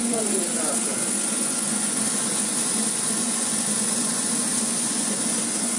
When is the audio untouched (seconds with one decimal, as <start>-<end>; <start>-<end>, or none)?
none